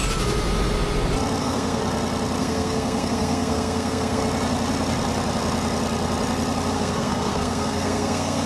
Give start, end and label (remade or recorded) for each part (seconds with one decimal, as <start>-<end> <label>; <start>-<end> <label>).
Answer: 0.0-1.4 recorded; 1.4-1.8 remade; 1.8-2.4 recorded; 2.4-4.2 remade; 4.2-6.7 recorded; 6.7-8.5 remade